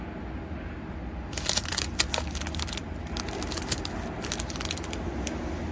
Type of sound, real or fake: real